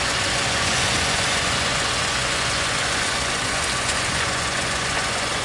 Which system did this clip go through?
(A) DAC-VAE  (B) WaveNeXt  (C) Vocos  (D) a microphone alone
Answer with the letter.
C